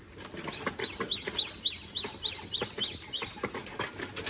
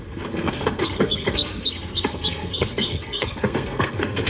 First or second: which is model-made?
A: second